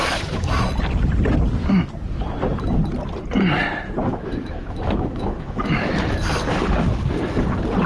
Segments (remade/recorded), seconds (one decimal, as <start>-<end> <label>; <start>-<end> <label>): 0.0-0.5 remade; 0.5-4.1 recorded; 4.1-5.9 remade; 5.9-7.9 recorded

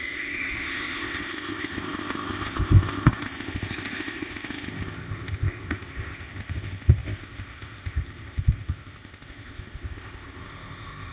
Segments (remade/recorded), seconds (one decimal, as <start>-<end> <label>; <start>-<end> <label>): 0.0-11.1 remade